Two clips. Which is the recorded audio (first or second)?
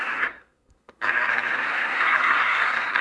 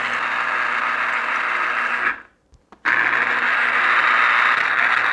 second